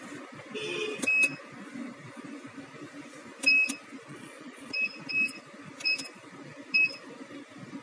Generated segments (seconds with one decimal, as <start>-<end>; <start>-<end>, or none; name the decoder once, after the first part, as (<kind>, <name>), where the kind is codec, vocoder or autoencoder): 4.1-4.7 (vocoder, Vocos)